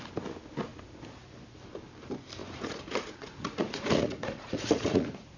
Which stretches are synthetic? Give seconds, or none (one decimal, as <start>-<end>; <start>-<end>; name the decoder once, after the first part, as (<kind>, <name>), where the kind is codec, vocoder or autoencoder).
2.4-5.4 (vocoder, Vocos)